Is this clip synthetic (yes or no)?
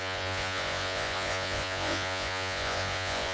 yes